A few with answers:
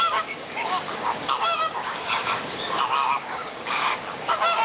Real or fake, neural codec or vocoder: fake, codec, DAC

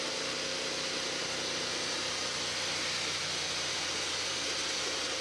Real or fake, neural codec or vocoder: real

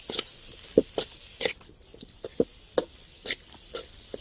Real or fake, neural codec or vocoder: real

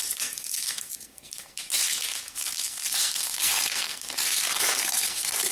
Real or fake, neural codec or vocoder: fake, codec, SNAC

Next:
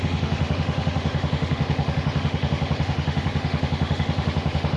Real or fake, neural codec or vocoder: fake, autoencoder, DAC-VAE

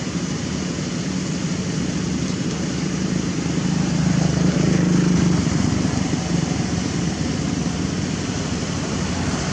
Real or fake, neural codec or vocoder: real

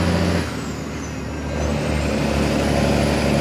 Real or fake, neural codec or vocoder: real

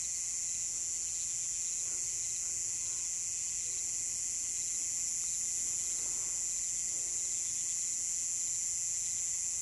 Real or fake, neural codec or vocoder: real